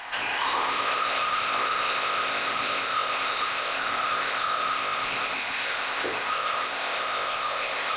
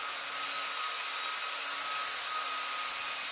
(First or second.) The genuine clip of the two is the second